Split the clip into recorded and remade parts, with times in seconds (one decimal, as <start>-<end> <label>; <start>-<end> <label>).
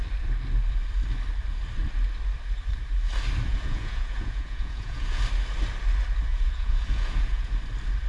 0.0-3.5 recorded; 3.5-5.2 remade; 5.2-6.3 recorded; 6.3-7.5 remade; 7.5-8.1 recorded